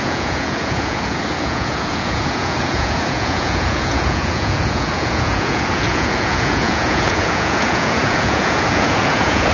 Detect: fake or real fake